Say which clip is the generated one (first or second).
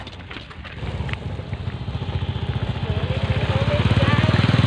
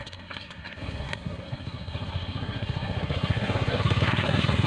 second